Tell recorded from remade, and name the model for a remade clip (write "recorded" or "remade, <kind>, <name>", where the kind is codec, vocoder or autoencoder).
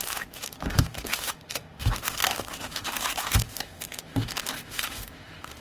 remade, autoencoder, DAC-VAE